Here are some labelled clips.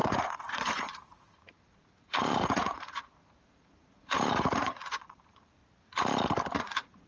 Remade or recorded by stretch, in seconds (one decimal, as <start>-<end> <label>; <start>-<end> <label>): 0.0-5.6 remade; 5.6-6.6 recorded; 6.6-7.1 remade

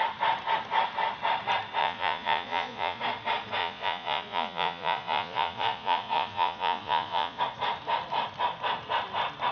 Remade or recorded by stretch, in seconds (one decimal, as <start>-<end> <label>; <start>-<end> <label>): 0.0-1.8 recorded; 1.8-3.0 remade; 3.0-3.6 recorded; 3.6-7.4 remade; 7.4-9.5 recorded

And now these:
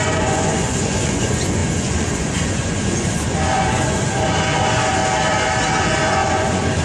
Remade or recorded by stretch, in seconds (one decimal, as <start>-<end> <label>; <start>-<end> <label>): 0.0-5.0 remade; 5.0-5.8 recorded; 5.8-6.8 remade

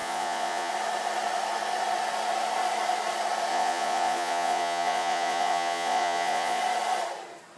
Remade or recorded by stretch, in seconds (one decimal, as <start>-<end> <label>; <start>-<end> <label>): 0.0-0.7 remade; 0.7-3.5 recorded; 3.5-6.6 remade; 6.6-7.6 recorded

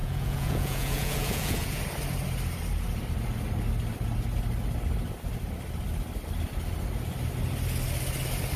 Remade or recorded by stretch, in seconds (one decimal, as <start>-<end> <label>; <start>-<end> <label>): 0.0-1.8 remade; 1.8-8.6 recorded